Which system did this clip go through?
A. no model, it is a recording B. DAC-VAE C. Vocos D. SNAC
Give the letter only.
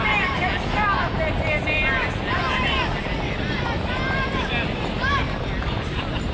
A